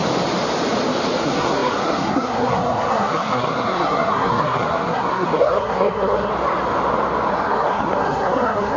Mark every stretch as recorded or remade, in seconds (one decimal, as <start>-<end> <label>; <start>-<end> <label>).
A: 0.0-1.2 recorded; 1.2-6.3 remade; 6.3-7.3 recorded; 7.3-8.8 remade